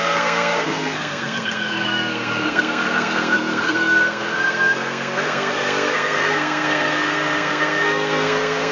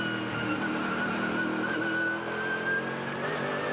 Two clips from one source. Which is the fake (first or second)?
first